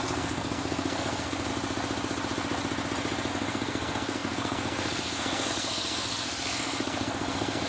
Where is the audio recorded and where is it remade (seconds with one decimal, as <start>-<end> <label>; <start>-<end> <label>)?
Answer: 0.0-1.5 remade; 1.5-3.3 recorded; 3.3-7.7 remade